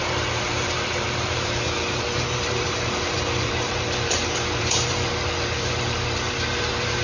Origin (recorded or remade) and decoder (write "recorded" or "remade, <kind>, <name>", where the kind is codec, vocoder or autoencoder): remade, vocoder, BigVGAN v2